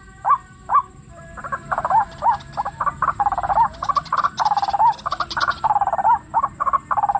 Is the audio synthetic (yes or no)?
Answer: no